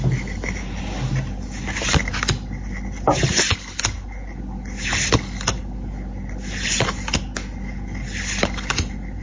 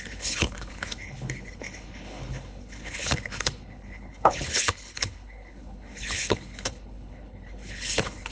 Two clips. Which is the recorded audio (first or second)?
first